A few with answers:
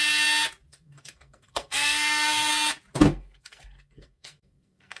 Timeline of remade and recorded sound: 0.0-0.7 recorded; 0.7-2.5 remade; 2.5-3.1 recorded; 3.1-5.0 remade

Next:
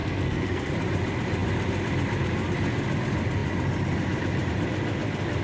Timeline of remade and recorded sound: 0.0-0.7 remade; 0.7-5.4 recorded

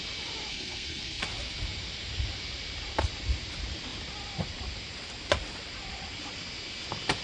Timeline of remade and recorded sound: 0.0-0.5 recorded; 0.5-1.2 remade; 1.2-7.2 recorded

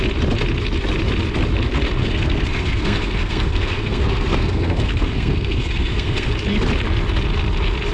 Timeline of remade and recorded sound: 0.0-2.0 recorded; 2.0-6.3 remade; 6.3-7.9 recorded

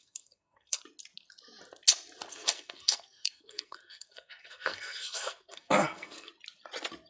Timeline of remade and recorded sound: 0.0-0.8 remade; 0.8-2.3 recorded; 2.3-6.3 remade; 6.3-7.1 recorded

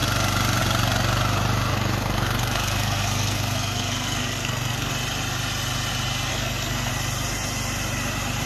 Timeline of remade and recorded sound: 0.0-1.7 recorded; 1.7-4.9 remade; 4.9-6.3 recorded; 6.3-6.9 remade; 6.9-8.5 recorded

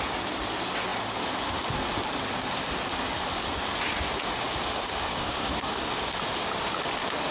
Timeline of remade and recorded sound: 0.0-5.2 recorded; 5.2-5.9 remade; 5.9-7.3 recorded